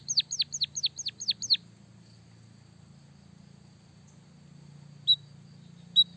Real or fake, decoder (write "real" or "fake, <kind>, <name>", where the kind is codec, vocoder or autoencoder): real